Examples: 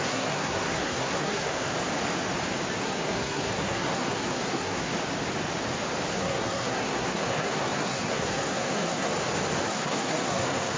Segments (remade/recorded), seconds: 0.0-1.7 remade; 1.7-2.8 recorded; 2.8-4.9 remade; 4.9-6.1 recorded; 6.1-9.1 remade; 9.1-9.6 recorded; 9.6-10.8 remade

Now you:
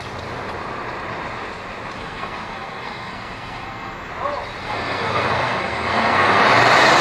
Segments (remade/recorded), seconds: 0.0-2.0 recorded; 2.0-4.1 remade; 4.1-4.6 recorded; 4.6-6.4 remade; 6.4-7.0 recorded

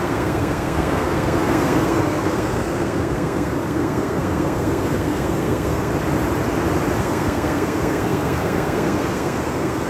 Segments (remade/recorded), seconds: 0.0-5.9 remade; 5.9-7.0 recorded; 7.0-9.9 remade